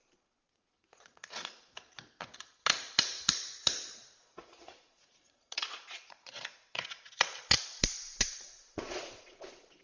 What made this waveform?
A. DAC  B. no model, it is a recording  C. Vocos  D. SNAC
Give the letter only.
C